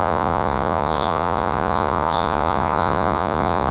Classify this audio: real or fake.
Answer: fake